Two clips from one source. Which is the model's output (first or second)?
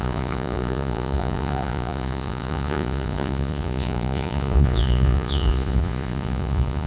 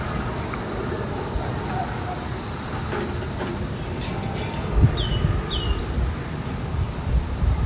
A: first